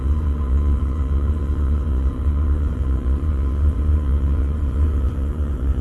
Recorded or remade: remade